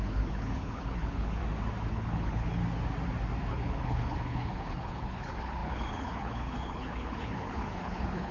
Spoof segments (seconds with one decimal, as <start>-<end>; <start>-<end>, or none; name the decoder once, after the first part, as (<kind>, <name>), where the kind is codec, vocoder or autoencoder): 0.0-1.4 (codec, HILCodec); 1.9-2.6; 3.5-8.3

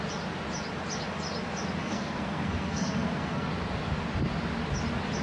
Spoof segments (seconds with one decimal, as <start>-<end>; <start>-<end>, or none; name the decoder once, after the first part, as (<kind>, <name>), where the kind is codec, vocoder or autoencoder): 1.8-3.5 (codec, SNAC)

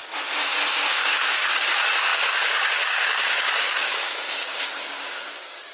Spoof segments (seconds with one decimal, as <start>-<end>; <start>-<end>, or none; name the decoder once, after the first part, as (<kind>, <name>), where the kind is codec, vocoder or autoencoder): 0.7-5.7 (codec, DAC)

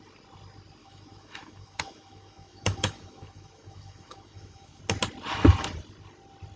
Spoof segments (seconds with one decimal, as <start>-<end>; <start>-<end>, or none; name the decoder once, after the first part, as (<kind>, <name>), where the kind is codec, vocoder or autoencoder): 0.8-4.8 (autoencoder, DAC-VAE)

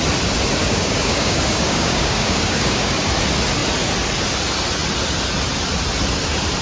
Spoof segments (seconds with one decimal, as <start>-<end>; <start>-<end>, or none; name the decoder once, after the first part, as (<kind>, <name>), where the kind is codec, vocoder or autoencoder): 0.6-3.0 (codec, DAC)

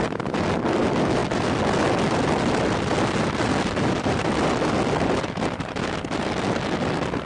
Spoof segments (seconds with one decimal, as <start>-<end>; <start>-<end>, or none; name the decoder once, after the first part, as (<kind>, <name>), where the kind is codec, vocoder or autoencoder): none

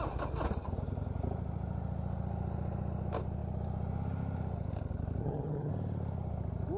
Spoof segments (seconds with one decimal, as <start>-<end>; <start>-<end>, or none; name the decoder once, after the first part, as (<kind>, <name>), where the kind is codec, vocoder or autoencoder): 5.2-5.7 (vocoder, HiFi-GAN)

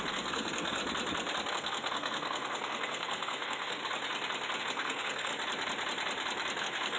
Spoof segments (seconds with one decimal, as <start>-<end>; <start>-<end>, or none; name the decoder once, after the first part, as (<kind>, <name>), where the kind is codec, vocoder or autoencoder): 0.0-0.8 (codec, SNAC); 1.5-3.8; 4.6-5.3; 6.6-7.0